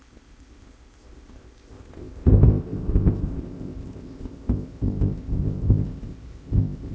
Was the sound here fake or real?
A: fake